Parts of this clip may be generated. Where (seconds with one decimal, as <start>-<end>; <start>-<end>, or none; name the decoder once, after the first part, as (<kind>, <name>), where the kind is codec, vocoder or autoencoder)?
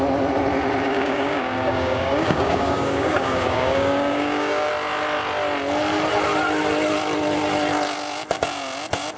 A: 0.8-4.7 (codec, DAC)